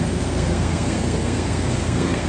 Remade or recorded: remade